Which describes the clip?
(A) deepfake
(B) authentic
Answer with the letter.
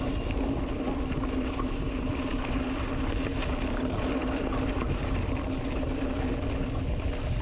B